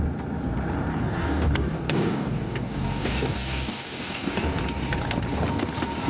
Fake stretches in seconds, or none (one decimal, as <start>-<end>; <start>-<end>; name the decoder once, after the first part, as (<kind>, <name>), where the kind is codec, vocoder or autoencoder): 0.9-4.6 (codec, DAC)